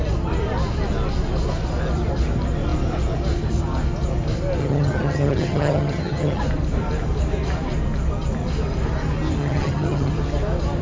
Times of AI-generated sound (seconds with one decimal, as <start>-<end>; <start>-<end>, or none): 4.6-6.4; 9.4-10.1